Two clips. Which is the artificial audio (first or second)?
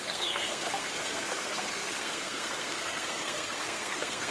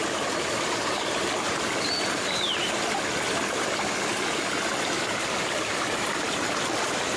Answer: first